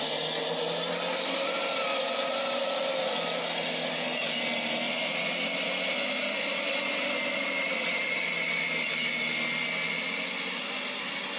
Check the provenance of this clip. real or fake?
real